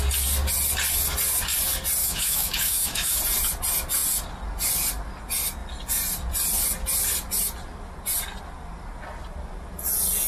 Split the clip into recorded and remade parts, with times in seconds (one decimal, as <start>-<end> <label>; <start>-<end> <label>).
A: 0.0-2.0 recorded; 2.0-3.2 remade; 3.2-10.3 recorded